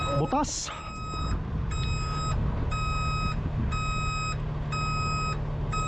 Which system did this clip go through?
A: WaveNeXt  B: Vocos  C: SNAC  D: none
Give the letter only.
D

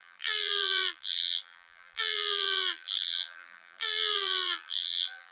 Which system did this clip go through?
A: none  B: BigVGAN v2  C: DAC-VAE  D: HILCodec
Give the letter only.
B